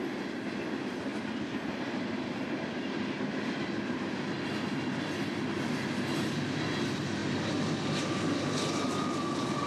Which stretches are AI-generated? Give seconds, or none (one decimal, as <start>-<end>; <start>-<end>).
none